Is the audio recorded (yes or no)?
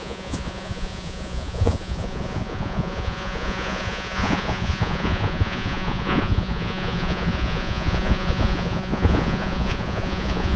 no